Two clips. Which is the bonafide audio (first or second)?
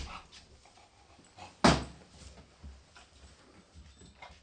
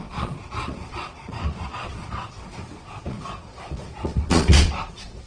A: first